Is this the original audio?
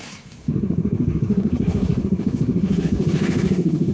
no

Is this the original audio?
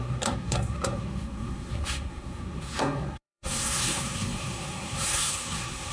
no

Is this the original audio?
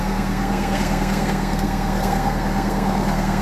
no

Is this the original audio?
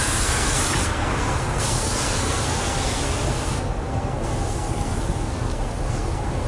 no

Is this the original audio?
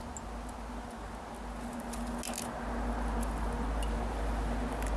yes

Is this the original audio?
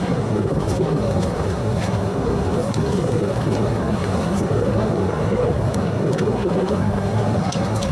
no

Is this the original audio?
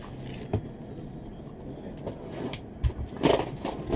yes